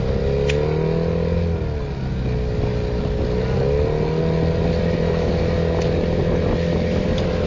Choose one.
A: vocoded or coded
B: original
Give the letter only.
B